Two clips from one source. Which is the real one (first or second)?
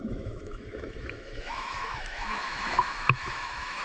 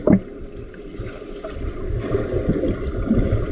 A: second